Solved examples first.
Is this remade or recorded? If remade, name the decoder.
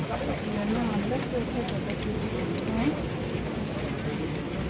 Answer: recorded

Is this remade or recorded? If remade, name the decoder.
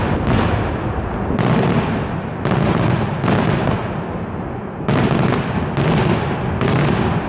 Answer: recorded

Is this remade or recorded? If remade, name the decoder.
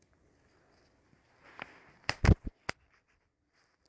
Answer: recorded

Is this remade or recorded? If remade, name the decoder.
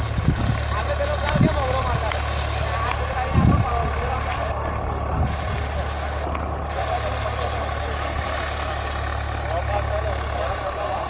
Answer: recorded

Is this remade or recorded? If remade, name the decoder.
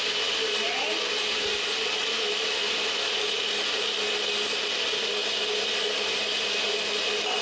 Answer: recorded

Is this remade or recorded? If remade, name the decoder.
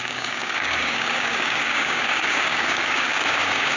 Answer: remade, codec, DAC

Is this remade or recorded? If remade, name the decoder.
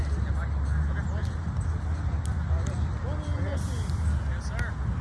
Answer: recorded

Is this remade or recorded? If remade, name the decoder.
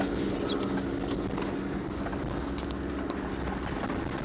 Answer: recorded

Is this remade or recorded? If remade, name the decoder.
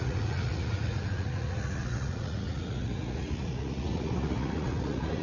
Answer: remade, vocoder, Vocos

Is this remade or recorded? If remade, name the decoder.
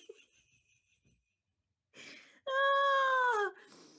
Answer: recorded